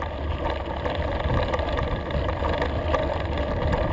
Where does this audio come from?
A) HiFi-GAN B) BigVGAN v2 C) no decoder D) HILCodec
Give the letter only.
C